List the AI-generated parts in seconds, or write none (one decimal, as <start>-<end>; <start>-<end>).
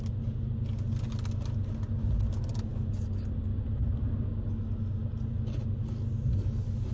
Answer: none